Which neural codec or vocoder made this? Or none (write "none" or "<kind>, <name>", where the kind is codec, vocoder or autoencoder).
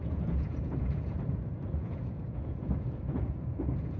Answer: vocoder, Vocos